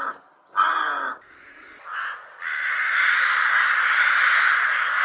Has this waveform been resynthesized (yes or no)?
no